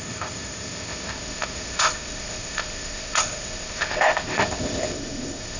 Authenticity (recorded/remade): remade